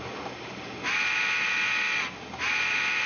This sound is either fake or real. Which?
real